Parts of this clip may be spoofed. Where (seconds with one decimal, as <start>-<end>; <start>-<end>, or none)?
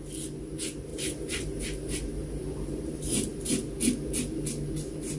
0.9-3.4